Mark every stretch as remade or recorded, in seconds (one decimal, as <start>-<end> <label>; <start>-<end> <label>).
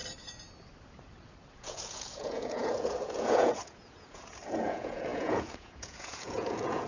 0.0-1.5 recorded; 1.5-6.9 remade